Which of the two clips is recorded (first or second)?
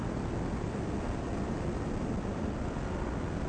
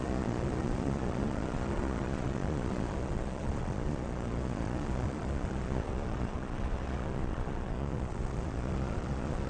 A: first